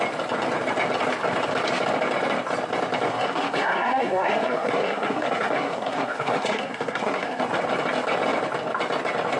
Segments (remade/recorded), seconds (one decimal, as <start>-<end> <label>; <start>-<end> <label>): 0.0-3.1 recorded; 3.1-7.4 remade; 7.4-9.4 recorded